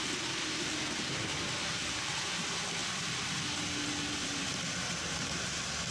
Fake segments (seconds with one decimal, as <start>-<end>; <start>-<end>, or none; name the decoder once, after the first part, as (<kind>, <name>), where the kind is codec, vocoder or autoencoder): 2.8-3.4 (vocoder, BigVGAN v2)